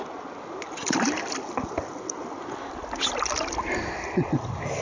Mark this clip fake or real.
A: real